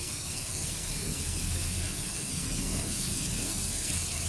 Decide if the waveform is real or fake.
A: fake